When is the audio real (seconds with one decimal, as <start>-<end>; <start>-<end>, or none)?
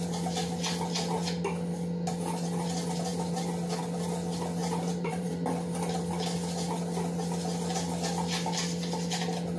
0.0-4.6; 5.3-9.6